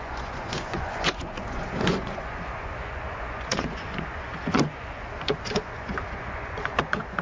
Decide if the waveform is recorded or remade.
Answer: remade